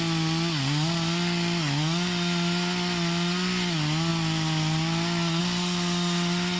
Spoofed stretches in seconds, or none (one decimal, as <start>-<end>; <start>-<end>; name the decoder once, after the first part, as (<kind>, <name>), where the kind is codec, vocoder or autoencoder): none